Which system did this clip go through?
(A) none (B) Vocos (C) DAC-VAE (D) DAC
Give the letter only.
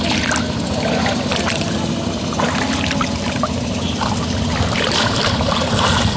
A